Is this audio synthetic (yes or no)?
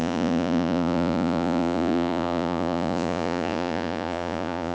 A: yes